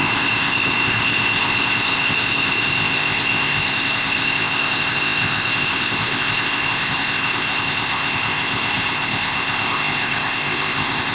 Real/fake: fake